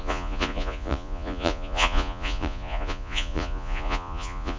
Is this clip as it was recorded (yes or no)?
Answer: no